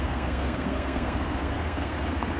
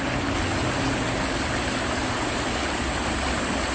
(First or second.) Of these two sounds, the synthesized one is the first